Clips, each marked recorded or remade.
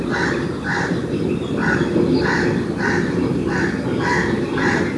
recorded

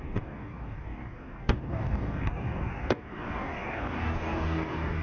remade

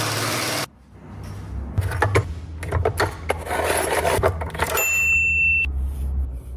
recorded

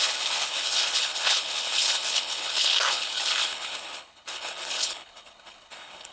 remade